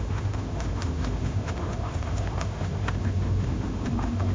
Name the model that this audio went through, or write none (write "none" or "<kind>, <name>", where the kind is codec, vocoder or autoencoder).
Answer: autoencoder, DAC-VAE